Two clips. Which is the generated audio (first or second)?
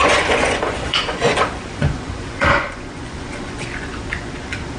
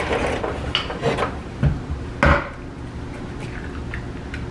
first